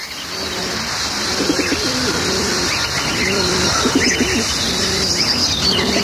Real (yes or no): no